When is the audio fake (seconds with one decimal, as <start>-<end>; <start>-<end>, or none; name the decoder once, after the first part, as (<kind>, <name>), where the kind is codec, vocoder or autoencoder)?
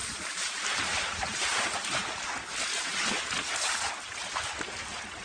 0.0-2.0 (vocoder, BigVGAN v2)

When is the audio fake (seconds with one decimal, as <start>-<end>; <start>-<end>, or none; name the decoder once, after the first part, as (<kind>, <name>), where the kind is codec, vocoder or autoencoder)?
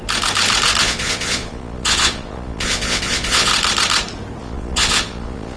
0.8-3.5 (vocoder, Vocos); 4.4-5.6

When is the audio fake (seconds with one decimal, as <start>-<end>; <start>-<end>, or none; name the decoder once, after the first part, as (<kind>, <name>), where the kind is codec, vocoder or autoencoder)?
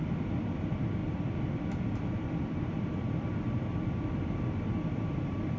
0.0-5.6 (vocoder, BigVGAN v2)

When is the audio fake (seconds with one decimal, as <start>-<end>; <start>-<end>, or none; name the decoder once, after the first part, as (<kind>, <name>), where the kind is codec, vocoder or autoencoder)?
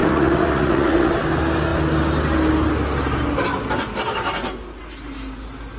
0.0-1.1 (vocoder, Vocos)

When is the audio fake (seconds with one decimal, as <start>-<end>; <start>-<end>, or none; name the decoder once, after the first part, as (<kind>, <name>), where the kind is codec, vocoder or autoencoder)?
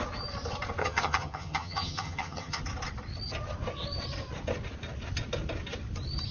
0.8-2.6 (vocoder, HiFi-GAN)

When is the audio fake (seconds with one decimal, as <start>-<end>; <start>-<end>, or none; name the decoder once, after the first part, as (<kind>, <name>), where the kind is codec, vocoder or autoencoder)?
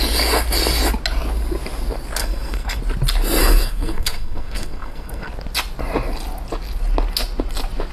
2.2-2.8 (codec, SNAC); 3.4-5.3